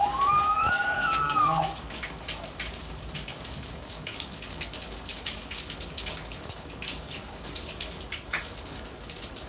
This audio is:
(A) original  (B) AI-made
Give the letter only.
B